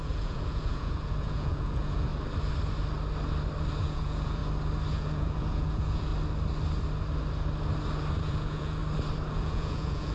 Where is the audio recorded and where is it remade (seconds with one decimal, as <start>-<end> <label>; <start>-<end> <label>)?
0.0-2.1 remade; 2.1-3.8 recorded; 3.8-4.4 remade; 4.4-4.9 recorded; 4.9-6.1 remade; 6.1-8.2 recorded; 8.2-8.8 remade; 8.8-9.3 recorded; 9.3-10.1 remade